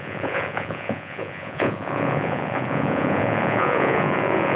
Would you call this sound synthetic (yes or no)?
yes